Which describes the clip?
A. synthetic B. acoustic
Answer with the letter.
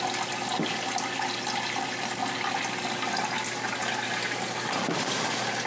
B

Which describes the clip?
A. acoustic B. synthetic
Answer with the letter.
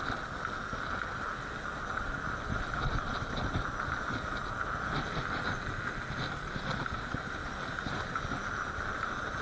A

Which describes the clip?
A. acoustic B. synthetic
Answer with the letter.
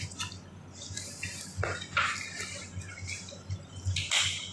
A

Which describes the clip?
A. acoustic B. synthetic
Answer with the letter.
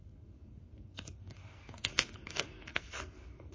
B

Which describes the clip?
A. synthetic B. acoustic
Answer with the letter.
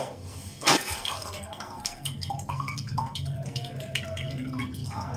A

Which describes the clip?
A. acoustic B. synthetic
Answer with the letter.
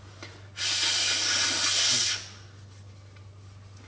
A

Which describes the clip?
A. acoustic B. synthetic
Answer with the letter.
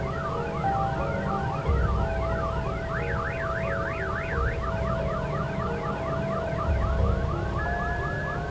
A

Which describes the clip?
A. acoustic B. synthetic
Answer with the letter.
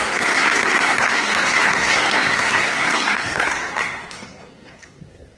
B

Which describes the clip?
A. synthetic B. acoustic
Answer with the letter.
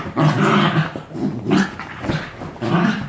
B